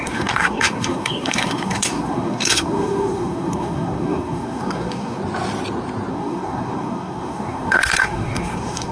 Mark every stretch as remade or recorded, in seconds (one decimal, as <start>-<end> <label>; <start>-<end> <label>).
0.0-5.2 remade; 5.2-6.1 recorded; 6.1-8.9 remade